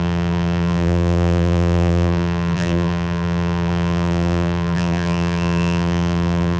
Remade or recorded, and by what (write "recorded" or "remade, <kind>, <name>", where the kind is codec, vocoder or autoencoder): remade, vocoder, BigVGAN v2